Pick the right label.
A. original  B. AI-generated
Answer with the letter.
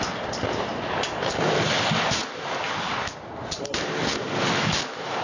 A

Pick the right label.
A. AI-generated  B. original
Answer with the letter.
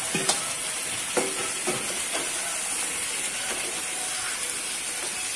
B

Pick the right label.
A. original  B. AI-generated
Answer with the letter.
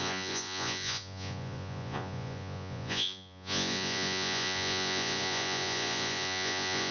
B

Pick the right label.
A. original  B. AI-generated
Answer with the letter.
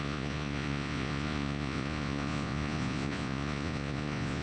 B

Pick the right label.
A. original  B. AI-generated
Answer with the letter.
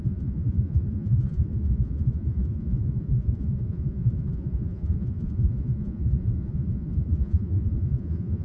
B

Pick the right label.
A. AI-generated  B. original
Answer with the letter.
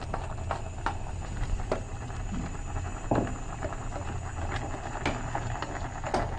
B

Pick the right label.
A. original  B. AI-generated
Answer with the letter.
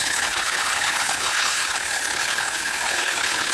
B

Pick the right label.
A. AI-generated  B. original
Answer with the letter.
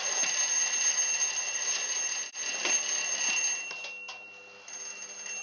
B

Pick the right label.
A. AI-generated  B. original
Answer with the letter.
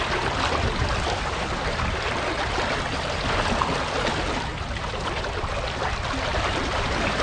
B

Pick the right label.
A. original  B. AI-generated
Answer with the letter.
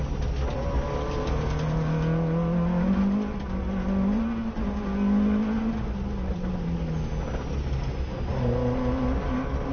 A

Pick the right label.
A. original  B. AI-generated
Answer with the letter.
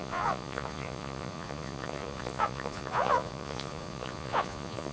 B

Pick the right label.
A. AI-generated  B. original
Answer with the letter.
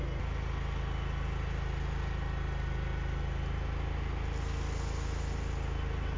B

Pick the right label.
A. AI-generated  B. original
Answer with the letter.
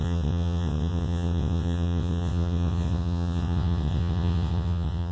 A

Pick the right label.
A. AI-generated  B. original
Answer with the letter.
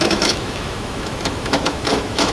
A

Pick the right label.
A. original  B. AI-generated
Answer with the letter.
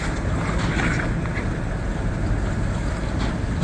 A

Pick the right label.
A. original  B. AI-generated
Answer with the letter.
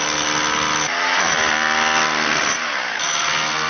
A